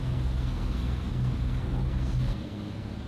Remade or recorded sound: remade